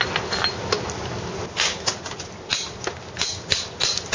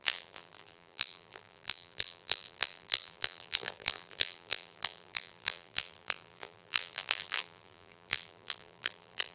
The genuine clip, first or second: first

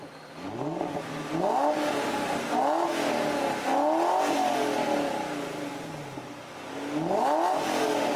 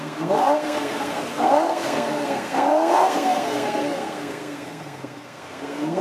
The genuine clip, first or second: first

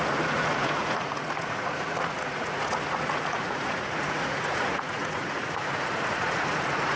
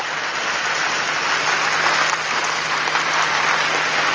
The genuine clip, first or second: second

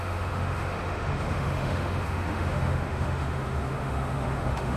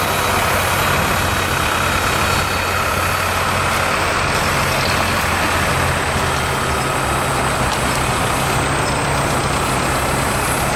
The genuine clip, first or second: second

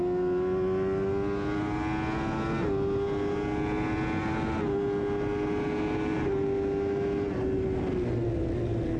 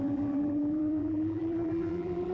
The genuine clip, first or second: first